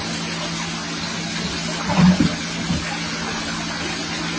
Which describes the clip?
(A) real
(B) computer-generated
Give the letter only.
A